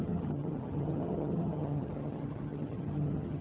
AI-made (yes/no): yes